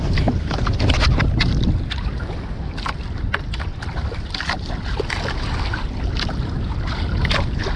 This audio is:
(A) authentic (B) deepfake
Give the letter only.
A